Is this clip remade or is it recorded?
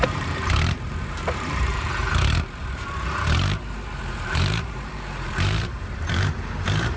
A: remade